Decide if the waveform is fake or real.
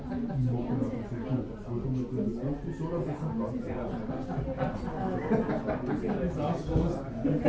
real